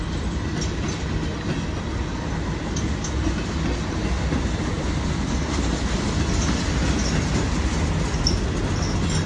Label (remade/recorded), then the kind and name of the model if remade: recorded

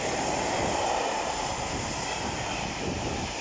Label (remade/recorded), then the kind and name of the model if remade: remade, vocoder, BigVGAN v2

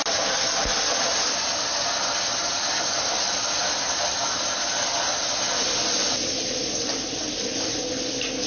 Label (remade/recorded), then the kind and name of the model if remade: recorded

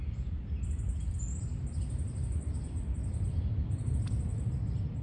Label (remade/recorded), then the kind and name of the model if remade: recorded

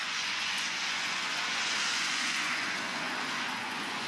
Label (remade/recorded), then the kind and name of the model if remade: remade, vocoder, Vocos